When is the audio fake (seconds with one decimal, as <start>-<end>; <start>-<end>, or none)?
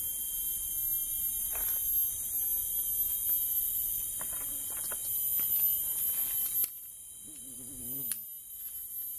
none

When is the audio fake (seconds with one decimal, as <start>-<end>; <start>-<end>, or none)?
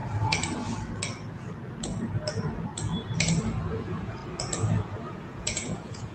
3.7-4.2; 5.1-6.1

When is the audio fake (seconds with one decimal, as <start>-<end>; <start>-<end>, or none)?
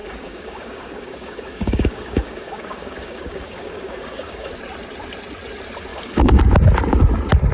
0.0-4.5; 5.9-6.4